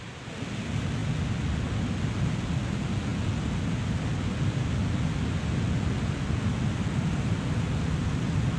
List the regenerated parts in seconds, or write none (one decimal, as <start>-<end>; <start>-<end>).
none